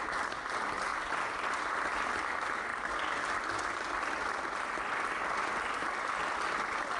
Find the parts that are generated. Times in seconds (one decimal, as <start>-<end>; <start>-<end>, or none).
none